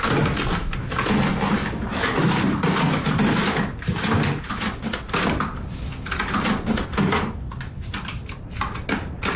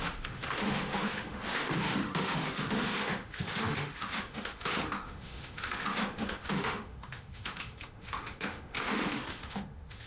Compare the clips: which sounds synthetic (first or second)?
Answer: second